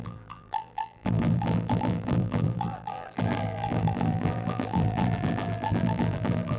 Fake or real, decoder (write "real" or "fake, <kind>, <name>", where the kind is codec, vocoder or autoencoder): fake, vocoder, BigVGAN v2